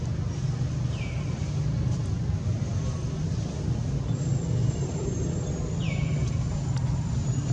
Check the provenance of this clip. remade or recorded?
recorded